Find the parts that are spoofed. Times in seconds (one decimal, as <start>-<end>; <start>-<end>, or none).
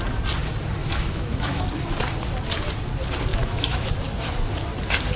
0.8-1.6; 3.3-3.9